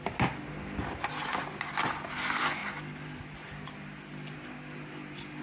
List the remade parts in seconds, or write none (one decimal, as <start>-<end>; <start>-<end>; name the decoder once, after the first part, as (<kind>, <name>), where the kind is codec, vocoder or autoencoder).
none